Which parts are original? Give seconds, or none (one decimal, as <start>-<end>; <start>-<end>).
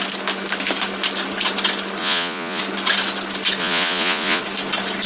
0.0-2.0; 2.6-3.6; 4.4-5.1